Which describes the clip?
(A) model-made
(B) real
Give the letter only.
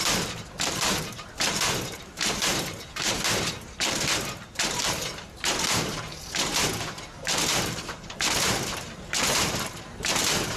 A